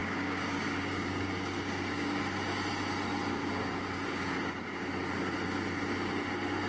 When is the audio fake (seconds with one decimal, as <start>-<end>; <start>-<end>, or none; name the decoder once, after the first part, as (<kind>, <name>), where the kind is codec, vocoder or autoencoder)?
0.0-2.2 (codec, DAC); 3.4-4.8